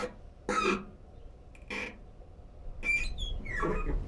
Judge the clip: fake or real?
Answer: real